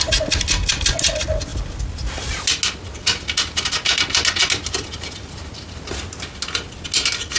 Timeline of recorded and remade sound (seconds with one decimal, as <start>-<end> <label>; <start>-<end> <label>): 0.0-7.4 recorded